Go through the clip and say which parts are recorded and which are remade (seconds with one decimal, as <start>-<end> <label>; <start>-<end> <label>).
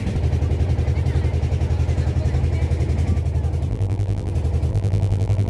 0.0-3.7 recorded; 3.7-4.3 remade; 4.3-4.7 recorded; 4.7-5.5 remade